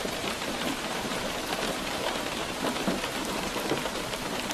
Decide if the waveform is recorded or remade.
remade